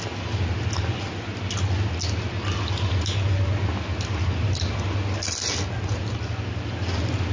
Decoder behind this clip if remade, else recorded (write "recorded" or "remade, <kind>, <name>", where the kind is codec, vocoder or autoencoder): recorded